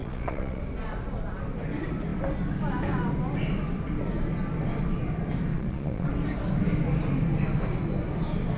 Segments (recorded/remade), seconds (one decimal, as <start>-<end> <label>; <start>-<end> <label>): 0.0-0.6 remade; 0.6-5.5 recorded; 5.5-6.1 remade; 6.1-8.6 recorded